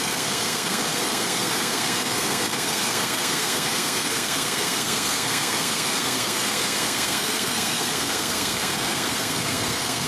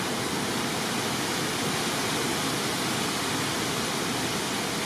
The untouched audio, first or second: second